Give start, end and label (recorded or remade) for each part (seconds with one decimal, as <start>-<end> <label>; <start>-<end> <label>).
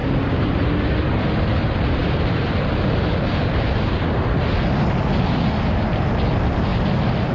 0.0-0.7 remade; 0.7-2.0 recorded; 2.0-3.1 remade; 3.1-7.3 recorded